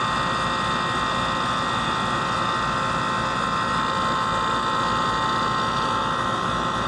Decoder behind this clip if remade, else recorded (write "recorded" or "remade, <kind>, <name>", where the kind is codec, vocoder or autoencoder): recorded